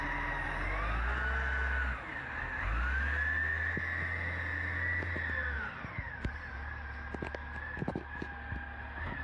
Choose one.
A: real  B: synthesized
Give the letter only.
A